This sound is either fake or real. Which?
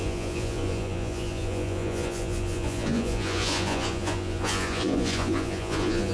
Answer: fake